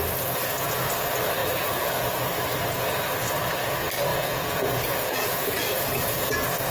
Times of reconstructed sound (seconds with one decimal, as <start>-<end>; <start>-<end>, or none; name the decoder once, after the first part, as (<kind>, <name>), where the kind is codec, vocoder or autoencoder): 1.4-1.9 (vocoder, Vocos); 4.1-6.3